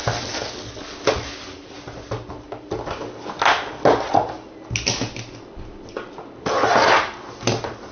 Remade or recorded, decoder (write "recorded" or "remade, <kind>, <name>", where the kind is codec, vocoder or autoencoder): recorded